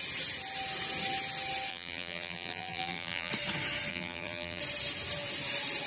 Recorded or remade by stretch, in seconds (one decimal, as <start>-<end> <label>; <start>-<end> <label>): 0.0-1.7 recorded; 1.7-3.3 remade; 3.3-3.9 recorded; 3.9-4.6 remade; 4.6-5.9 recorded